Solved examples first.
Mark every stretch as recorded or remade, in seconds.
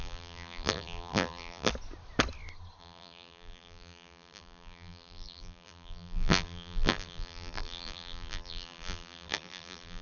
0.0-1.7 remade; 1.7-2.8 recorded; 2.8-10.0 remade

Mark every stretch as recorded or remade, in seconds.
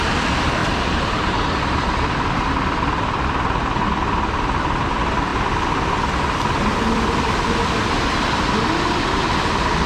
0.0-0.6 recorded; 0.6-1.6 remade; 1.6-9.9 recorded